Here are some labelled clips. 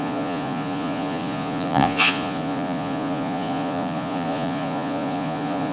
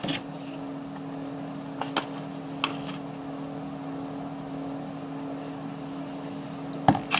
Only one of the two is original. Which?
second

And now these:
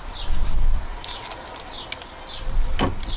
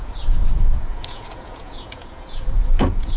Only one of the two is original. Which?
first